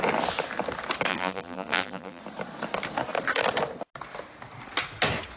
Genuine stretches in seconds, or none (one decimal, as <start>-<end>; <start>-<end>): 0.0-1.1; 2.2-5.4